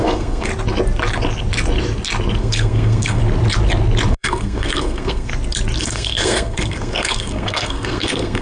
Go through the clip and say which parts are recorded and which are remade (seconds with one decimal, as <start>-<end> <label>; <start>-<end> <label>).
0.0-0.5 remade; 0.5-2.4 recorded; 2.4-3.2 remade; 3.2-4.1 recorded; 4.1-5.3 remade; 5.3-5.8 recorded; 5.8-8.4 remade